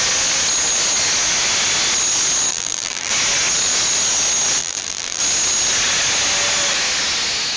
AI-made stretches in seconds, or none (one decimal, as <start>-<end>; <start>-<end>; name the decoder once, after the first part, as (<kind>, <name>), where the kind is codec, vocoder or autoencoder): 2.5-3.1 (vocoder, BigVGAN v2); 4.6-5.2